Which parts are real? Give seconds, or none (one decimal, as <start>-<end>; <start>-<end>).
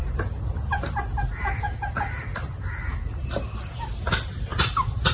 0.0-4.5